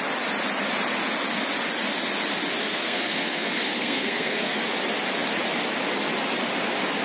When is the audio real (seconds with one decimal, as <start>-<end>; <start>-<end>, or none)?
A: 0.0-2.7; 4.5-7.0